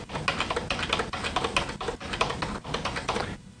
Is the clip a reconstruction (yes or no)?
no